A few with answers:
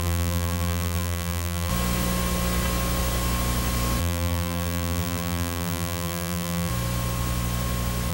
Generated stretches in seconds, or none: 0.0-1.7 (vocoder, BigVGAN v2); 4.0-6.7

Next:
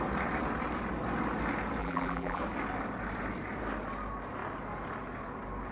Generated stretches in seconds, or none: 1.8-2.4 (vocoder, BigVGAN v2)

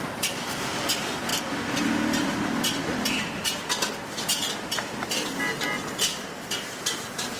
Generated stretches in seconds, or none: 2.8-3.8 (vocoder, BigVGAN v2); 6.1-6.8

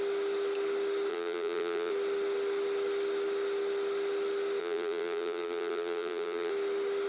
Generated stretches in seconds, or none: 1.1-1.9 (vocoder, BigVGAN v2); 4.6-6.5

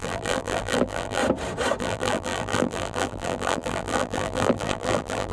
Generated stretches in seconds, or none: 0.0-1.2 (vocoder, BigVGAN v2); 1.8-5.3